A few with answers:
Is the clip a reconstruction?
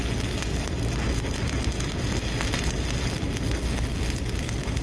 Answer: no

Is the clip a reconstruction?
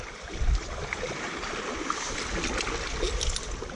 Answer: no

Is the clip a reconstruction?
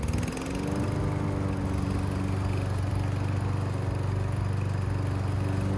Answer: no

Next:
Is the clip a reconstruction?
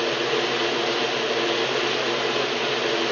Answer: no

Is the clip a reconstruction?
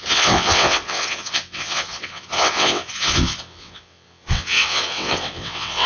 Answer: yes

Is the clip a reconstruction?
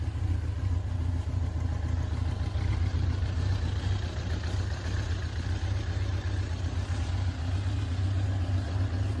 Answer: no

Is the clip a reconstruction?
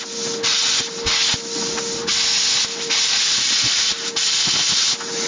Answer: no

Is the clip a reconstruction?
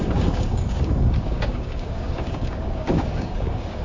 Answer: yes